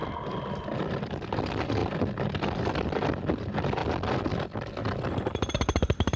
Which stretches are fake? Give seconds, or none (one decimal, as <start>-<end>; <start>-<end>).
0.6-1.8; 2.4-3.8; 5.1-6.2